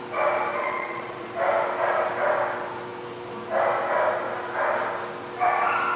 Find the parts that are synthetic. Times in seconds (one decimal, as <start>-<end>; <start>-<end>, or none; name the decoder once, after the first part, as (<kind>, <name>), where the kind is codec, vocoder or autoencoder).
0.6-1.3 (vocoder, Vocos)